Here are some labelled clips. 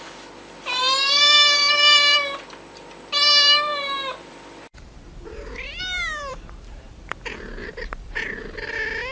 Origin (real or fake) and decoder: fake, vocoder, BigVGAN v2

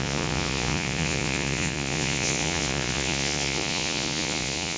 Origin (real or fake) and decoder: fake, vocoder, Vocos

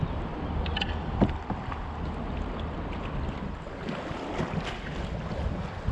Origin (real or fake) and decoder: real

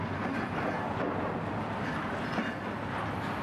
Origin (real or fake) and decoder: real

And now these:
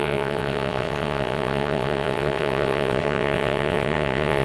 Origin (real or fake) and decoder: fake, vocoder, WaveNeXt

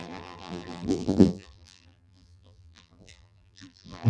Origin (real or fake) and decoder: fake, vocoder, BigVGAN v2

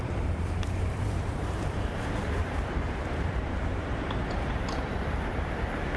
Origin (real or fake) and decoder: fake, vocoder, BigVGAN v2